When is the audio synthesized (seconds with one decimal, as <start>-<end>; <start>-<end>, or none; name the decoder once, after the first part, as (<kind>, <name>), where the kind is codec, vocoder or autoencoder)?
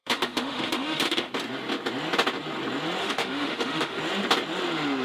0.0-1.3 (autoencoder, DAC-VAE); 3.0-4.0